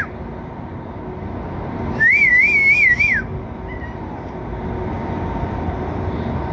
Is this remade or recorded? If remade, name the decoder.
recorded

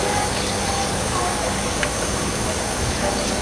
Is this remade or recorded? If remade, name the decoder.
remade, codec, DAC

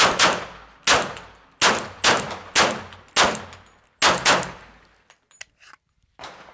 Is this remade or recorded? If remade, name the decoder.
recorded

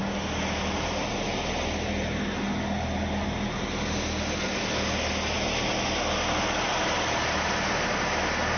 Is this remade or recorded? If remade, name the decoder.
recorded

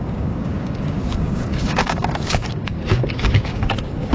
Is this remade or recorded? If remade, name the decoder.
remade, codec, DAC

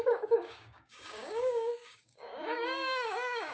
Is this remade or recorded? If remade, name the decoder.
remade, codec, DAC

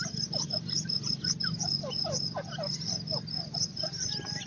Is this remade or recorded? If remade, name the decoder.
recorded